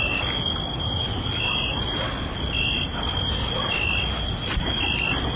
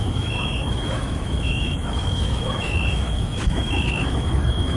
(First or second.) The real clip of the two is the first